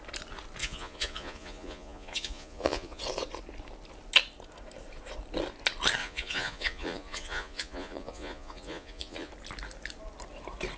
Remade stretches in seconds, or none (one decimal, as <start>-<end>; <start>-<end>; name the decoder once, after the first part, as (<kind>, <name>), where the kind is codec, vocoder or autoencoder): 0.6-3.0 (vocoder, Vocos); 6.0-9.3